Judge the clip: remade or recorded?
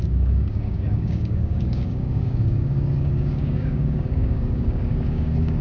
remade